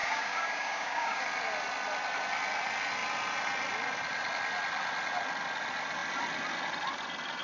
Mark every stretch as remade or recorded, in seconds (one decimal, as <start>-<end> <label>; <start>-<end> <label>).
0.0-1.2 remade; 1.2-7.4 recorded